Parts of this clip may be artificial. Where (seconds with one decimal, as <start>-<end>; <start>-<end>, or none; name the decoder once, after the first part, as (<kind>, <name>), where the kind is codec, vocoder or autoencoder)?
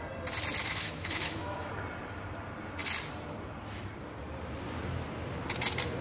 0.6-1.7 (autoencoder, DAC-VAE)